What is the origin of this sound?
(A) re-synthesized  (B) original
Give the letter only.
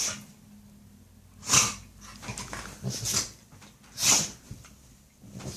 B